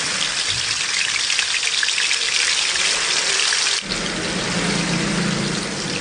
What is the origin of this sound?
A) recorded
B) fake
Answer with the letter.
A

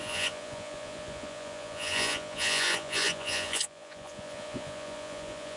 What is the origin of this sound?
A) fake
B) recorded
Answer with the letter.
A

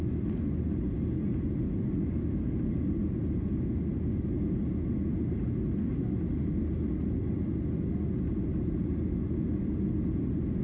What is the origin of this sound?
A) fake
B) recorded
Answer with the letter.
B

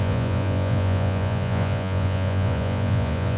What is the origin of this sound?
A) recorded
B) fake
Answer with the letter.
B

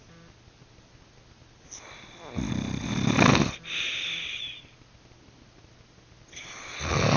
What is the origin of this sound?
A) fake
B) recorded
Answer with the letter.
B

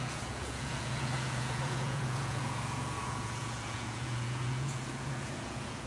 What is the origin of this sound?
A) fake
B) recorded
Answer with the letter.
A